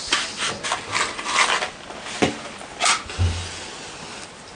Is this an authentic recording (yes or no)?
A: yes